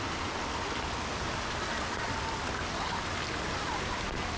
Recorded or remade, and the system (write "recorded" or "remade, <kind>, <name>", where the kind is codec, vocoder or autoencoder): recorded